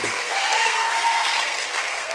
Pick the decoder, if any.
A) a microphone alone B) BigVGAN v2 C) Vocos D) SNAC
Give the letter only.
D